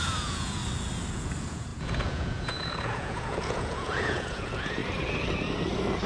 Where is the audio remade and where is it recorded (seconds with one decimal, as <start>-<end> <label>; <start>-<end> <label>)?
0.0-0.6 remade; 0.6-1.1 recorded; 1.1-4.8 remade; 4.8-6.1 recorded